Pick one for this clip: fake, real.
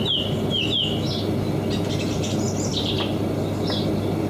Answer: real